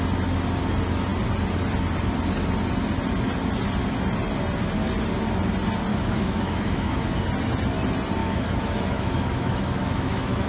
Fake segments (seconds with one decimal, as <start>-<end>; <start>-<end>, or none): 5.9-7.2; 8.2-10.5